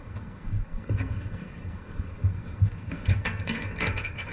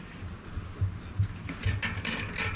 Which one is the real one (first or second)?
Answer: second